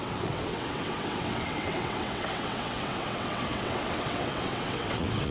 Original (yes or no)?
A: no